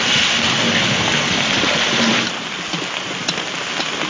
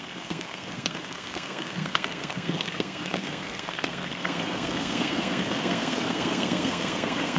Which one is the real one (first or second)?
first